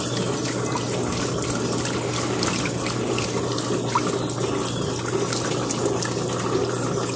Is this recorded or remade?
recorded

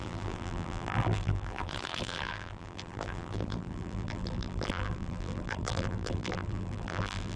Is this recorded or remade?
remade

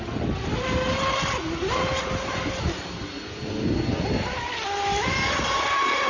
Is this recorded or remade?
recorded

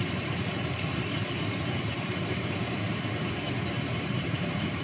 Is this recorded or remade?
remade